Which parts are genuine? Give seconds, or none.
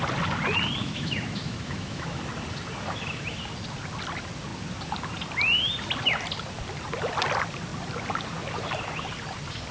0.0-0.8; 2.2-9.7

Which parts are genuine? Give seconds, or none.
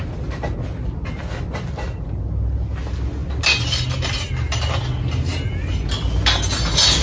0.0-7.0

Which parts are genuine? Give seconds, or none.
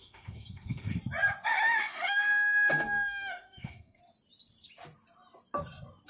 1.0-1.5; 4.0-6.1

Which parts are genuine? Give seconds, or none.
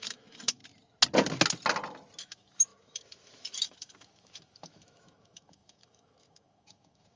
0.6-2.2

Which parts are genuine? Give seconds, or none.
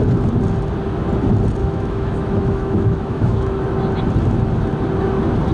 0.0-1.6; 3.6-5.5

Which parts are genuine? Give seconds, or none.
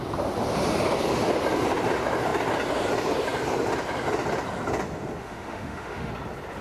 0.0-5.2; 6.1-6.6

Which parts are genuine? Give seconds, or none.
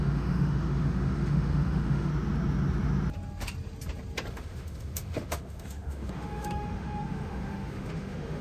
2.1-4.3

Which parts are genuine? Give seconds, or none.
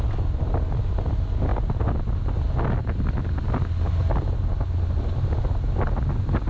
0.0-6.5